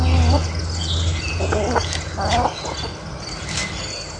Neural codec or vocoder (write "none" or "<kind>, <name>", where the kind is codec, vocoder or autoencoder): none